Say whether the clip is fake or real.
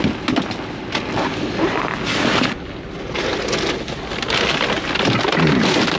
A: real